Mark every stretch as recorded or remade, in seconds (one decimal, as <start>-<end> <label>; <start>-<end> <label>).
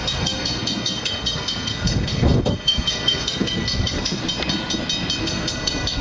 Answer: 0.0-4.2 remade; 4.2-5.2 recorded; 5.2-6.0 remade